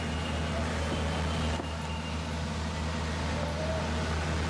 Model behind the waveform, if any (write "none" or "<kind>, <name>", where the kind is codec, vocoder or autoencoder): none